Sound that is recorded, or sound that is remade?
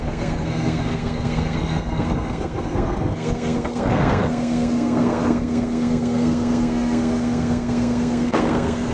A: remade